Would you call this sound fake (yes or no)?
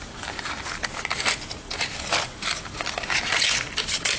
no